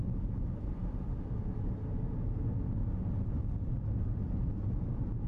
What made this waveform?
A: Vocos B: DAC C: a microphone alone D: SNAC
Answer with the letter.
C